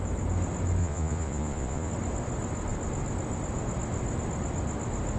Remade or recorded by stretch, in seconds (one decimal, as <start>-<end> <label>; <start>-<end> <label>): 0.0-0.8 recorded; 0.8-1.9 remade; 1.9-5.2 recorded